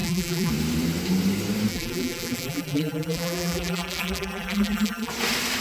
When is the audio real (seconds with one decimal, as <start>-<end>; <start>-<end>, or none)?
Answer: 0.5-1.7; 5.1-5.6